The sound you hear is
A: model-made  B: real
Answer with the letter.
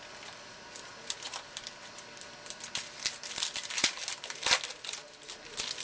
B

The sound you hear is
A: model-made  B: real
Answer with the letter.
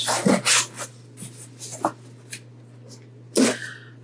B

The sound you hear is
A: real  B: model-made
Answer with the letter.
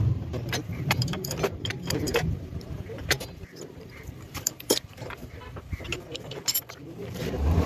B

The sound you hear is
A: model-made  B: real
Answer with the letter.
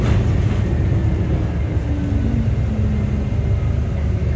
B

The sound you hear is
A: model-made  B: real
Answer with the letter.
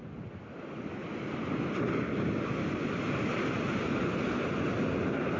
B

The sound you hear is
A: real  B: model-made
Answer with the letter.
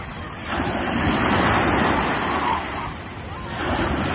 A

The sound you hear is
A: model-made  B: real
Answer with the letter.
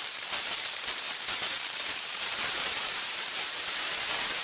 A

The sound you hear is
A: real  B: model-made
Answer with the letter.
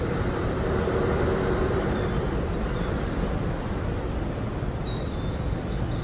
A